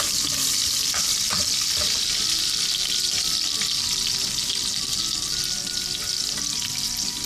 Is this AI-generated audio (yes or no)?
no